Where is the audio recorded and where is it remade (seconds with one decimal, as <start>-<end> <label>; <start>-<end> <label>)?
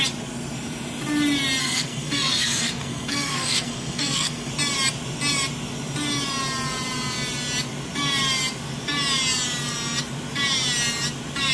0.0-1.6 recorded; 1.6-4.5 remade; 4.5-11.5 recorded